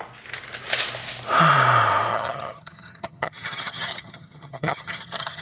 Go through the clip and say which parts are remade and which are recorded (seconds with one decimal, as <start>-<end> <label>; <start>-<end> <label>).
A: 0.0-2.1 recorded; 2.1-5.4 remade